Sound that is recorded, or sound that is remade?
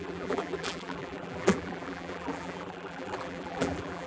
remade